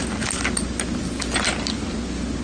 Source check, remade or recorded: recorded